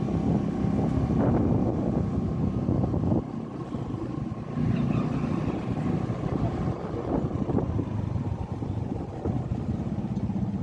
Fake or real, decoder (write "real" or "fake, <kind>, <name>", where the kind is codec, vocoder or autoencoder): real